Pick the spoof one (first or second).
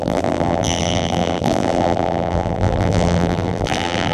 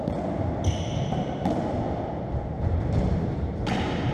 first